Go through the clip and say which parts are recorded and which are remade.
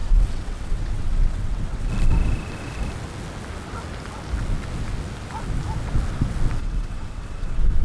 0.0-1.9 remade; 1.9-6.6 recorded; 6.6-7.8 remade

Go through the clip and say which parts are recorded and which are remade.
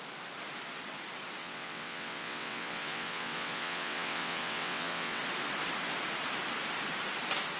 0.0-1.4 recorded; 1.4-5.2 remade; 5.2-7.6 recorded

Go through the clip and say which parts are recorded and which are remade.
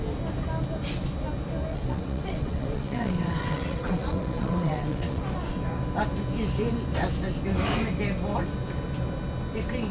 0.0-1.7 recorded; 1.7-5.2 remade; 5.2-9.9 recorded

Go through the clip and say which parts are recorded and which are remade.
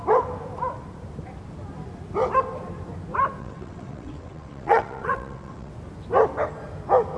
0.0-3.4 recorded; 3.4-5.7 remade; 5.7-7.2 recorded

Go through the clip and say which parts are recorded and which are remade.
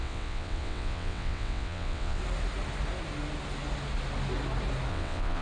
0.0-2.2 remade; 2.2-4.9 recorded; 4.9-5.4 remade